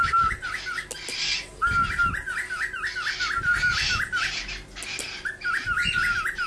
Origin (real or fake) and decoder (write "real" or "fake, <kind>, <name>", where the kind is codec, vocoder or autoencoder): real